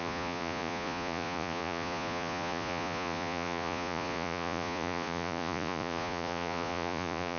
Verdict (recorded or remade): remade